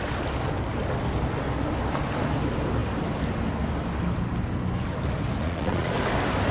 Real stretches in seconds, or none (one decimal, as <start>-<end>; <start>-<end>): 0.0-5.4; 5.9-6.5